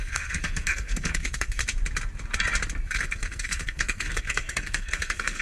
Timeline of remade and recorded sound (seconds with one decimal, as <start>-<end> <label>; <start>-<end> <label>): 0.0-1.6 remade; 1.6-2.9 recorded; 2.9-5.4 remade